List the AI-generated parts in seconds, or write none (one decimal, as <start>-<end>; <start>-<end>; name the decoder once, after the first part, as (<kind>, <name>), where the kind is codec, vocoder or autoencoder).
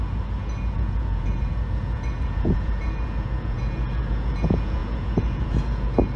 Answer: 0.0-6.2 (vocoder, Vocos)